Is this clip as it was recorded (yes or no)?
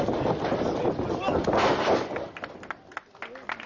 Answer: yes